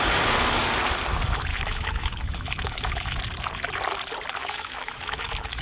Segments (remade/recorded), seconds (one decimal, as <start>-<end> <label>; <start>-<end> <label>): 0.0-1.5 recorded; 1.5-3.2 remade; 3.2-4.4 recorded; 4.4-5.6 remade